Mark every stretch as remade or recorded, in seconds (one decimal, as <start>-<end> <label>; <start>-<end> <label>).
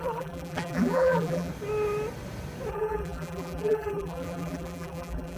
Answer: 0.0-1.5 remade; 1.5-2.7 recorded; 2.7-5.4 remade